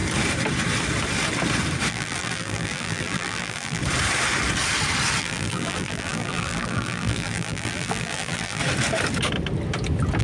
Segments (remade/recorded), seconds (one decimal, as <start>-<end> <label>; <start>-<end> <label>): 0.0-1.9 recorded; 1.9-3.8 remade; 3.8-5.2 recorded; 5.2-8.6 remade; 8.6-10.2 recorded